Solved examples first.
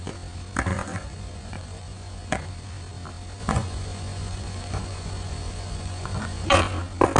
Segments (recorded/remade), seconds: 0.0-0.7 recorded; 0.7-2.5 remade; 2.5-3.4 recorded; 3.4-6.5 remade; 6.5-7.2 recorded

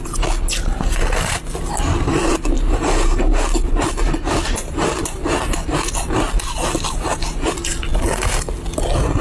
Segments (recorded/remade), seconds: 0.0-9.2 recorded

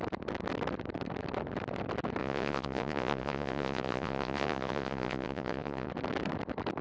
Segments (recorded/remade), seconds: 0.0-2.2 recorded; 2.2-5.9 remade; 5.9-6.8 recorded

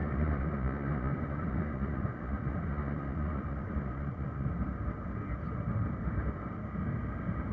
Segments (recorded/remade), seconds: 0.0-4.5 remade; 4.5-7.5 recorded

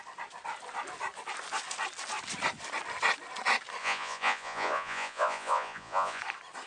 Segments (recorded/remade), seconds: 0.0-3.8 recorded; 3.8-6.2 remade; 6.2-6.7 recorded

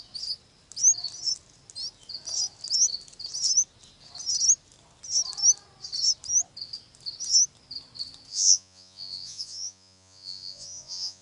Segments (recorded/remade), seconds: 0.0-8.3 recorded; 8.3-11.2 remade